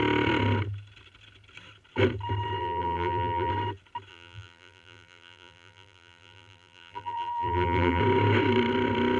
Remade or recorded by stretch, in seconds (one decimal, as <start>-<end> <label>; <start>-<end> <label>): 0.0-2.6 recorded; 2.6-3.5 remade; 3.5-4.1 recorded; 4.1-8.0 remade; 8.0-9.2 recorded